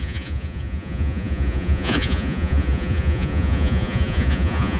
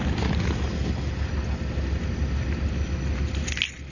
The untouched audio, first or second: second